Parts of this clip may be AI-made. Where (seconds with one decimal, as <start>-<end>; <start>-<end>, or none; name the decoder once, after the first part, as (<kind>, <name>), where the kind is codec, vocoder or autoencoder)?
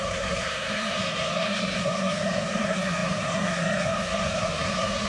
0.0-5.1 (codec, SNAC)